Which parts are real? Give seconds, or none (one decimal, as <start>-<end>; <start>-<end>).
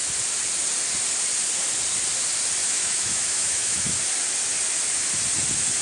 0.0-2.6; 4.0-5.8